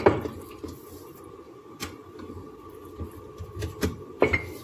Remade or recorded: recorded